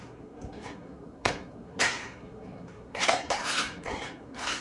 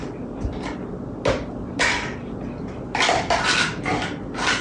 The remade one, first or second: first